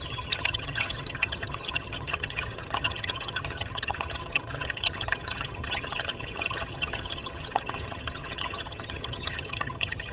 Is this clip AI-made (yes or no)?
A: yes